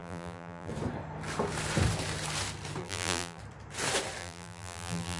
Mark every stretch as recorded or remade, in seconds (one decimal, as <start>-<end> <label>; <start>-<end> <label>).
0.0-0.7 remade; 0.7-2.8 recorded; 2.8-3.4 remade; 3.4-4.2 recorded; 4.2-5.2 remade